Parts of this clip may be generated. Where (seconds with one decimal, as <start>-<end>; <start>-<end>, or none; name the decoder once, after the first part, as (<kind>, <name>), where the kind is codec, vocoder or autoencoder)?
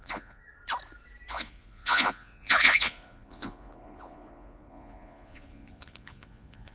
0.0-0.4 (vocoder, Vocos); 1.3-6.7